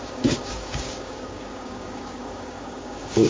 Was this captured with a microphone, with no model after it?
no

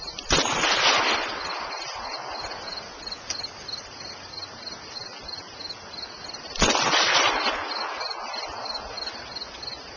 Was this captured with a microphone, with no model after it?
yes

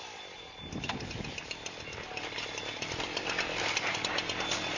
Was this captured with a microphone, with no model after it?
yes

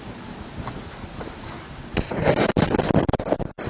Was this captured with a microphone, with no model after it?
yes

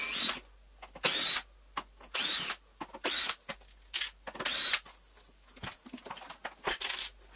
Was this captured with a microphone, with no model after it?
yes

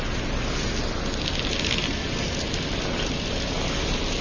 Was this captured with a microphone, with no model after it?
yes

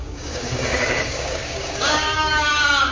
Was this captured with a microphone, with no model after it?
no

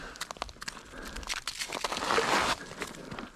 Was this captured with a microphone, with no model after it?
yes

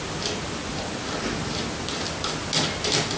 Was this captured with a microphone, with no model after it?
yes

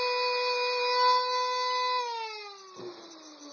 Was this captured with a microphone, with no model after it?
yes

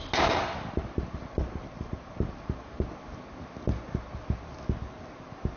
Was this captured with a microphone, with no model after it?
yes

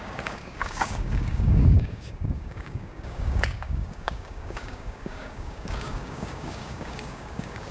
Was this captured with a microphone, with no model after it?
no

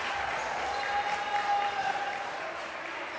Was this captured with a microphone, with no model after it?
yes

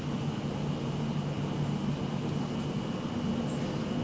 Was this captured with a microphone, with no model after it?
yes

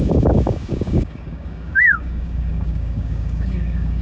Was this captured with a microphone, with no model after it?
no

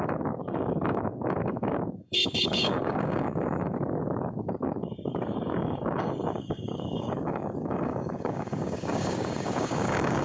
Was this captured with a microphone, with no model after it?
no